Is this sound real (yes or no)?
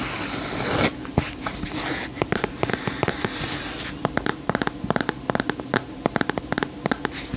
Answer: yes